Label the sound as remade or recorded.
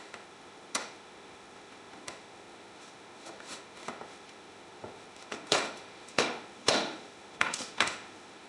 remade